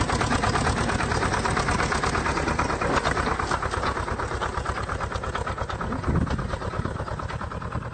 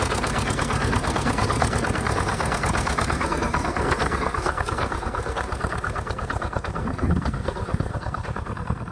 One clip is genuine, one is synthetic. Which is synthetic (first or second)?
second